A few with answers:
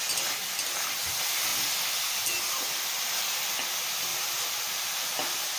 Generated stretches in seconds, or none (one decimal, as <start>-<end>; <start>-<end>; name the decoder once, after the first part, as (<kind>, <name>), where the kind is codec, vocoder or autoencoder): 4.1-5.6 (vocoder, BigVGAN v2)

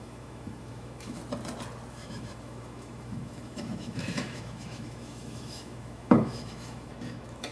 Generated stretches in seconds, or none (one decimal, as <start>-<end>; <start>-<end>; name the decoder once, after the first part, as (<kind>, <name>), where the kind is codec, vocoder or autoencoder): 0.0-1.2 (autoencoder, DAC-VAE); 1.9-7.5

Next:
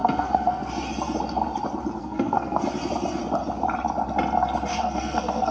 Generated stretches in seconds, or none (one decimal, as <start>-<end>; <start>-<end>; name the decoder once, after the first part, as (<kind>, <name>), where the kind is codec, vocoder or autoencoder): 0.0-0.7 (codec, SNAC); 2.0-2.6; 4.7-5.5

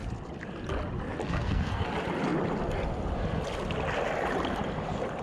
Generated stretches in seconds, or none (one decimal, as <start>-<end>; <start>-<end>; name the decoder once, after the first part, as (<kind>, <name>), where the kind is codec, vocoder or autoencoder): 1.2-1.9 (codec, SNAC)

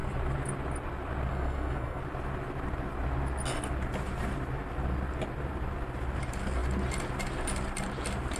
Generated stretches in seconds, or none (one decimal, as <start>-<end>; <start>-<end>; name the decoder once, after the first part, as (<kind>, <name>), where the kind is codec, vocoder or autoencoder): 1.3-2.0 (codec, SNAC)

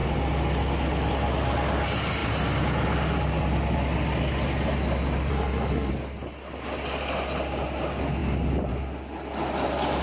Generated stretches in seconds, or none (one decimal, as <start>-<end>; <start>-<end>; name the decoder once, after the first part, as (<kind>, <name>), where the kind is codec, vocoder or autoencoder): 5.3-5.9 (codec, SNAC)